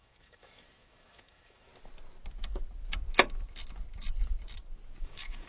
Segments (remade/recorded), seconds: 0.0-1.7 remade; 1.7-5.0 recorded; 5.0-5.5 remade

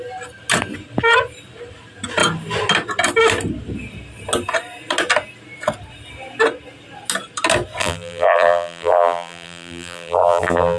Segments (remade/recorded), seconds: 0.0-7.8 recorded; 7.8-10.8 remade

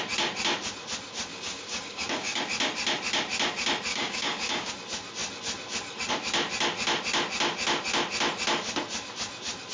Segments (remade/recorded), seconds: 0.0-1.3 recorded; 1.3-2.4 remade; 2.4-3.9 recorded; 3.9-4.7 remade; 4.7-9.7 recorded

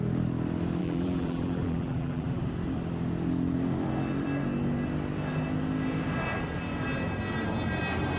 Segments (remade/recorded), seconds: 0.0-0.8 recorded; 0.8-2.4 remade; 2.4-8.2 recorded

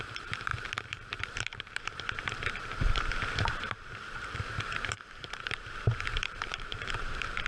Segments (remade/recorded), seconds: 0.0-7.5 remade

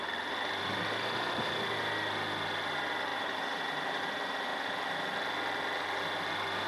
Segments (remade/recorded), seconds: 0.0-3.1 recorded; 3.1-4.1 remade; 4.1-6.7 recorded